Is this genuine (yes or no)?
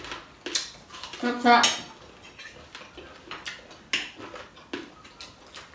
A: yes